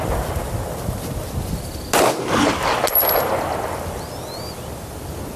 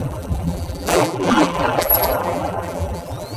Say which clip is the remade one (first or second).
second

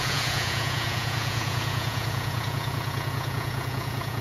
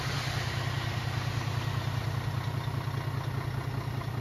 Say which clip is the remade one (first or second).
first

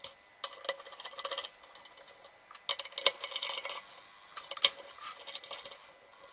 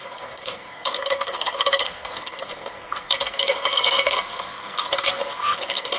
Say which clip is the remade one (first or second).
second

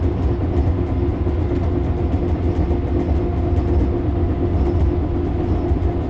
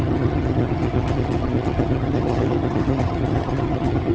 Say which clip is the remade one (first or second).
second